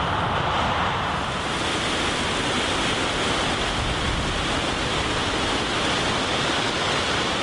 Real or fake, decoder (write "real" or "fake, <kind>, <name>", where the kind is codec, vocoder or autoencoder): real